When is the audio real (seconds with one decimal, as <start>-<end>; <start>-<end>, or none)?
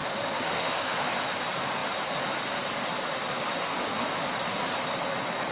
1.1-5.5